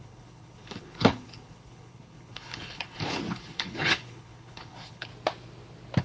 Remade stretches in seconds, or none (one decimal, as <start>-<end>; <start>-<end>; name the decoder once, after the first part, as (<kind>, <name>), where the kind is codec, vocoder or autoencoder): 0.0-5.1 (codec, HILCodec)

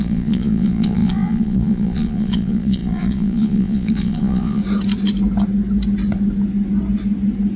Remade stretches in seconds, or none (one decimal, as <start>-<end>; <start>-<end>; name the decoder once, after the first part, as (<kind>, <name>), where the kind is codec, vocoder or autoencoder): 0.0-4.6 (vocoder, Vocos)